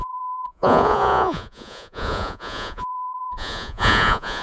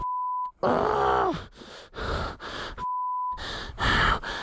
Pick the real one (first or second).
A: second